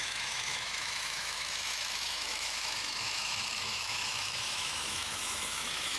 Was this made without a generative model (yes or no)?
no